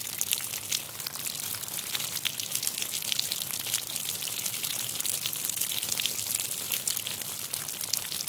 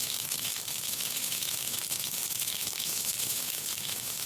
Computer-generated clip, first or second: second